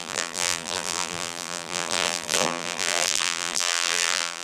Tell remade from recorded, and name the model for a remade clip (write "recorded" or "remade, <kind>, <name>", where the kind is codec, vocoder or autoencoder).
remade, vocoder, BigVGAN v2